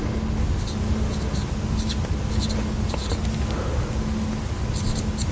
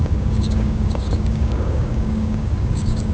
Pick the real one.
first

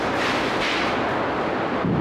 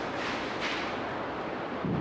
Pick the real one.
first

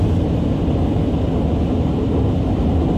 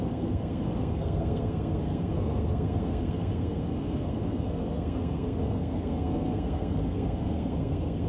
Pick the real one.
first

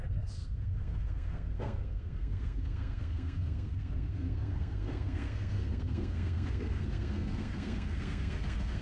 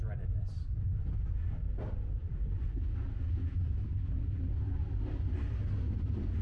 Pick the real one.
second